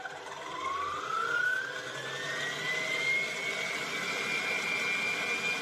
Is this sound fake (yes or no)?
no